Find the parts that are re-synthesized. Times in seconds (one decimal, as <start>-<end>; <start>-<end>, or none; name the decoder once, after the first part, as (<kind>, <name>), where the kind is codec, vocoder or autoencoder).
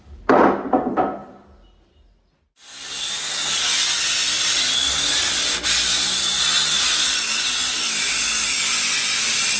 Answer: none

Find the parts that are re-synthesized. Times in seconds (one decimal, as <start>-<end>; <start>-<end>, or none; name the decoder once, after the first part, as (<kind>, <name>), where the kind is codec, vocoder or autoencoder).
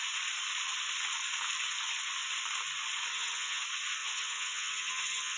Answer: 3.1-3.6 (vocoder, HiFi-GAN); 4.0-5.4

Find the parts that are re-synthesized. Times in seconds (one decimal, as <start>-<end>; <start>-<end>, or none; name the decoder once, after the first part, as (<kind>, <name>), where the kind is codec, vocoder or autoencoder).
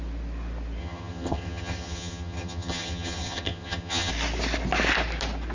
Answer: 0.8-4.1 (vocoder, HiFi-GAN)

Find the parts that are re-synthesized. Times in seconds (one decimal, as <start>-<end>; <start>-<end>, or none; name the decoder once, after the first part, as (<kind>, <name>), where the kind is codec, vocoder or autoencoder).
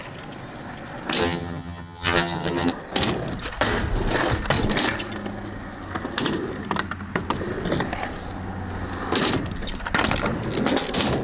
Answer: 1.2-2.7 (vocoder, HiFi-GAN)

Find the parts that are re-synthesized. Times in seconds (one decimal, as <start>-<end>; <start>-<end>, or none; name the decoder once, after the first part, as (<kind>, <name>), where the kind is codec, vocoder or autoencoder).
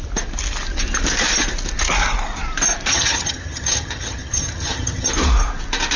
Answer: 2.9-5.1 (vocoder, HiFi-GAN)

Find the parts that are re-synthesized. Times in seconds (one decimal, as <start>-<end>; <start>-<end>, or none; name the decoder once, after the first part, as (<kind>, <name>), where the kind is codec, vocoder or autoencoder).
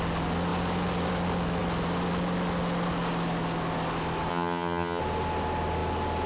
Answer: 4.3-5.0 (vocoder, HiFi-GAN)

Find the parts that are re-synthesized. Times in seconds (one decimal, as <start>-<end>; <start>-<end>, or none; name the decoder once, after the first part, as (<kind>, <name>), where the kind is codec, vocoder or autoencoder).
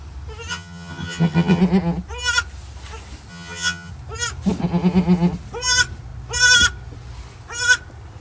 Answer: 0.5-1.6 (vocoder, HiFi-GAN); 3.3-3.9